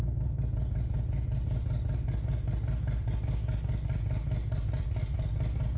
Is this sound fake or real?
real